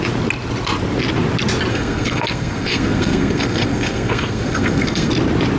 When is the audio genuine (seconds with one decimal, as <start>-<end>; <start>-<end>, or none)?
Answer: 0.0-1.7; 5.1-5.6